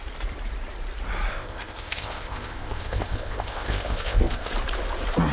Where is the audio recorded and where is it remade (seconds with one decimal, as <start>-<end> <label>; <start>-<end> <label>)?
0.0-1.3 recorded; 1.3-4.5 remade; 4.5-5.3 recorded